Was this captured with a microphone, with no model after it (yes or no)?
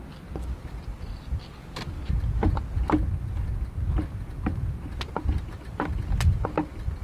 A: yes